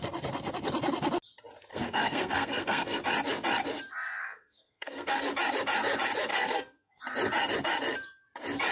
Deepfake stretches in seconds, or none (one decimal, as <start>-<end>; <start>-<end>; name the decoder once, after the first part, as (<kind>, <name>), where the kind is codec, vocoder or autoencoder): 1.7-3.0 (codec, SNAC); 4.2-5.2; 6.3-7.0